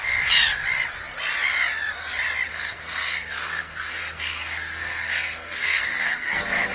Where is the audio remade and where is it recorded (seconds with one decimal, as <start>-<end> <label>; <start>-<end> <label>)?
0.0-2.5 recorded; 2.5-6.7 remade